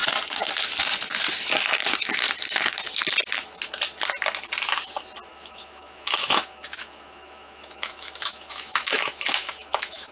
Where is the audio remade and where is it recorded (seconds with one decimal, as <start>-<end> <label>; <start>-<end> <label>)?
0.0-5.3 recorded; 5.3-10.1 remade